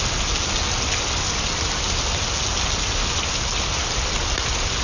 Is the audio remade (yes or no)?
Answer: no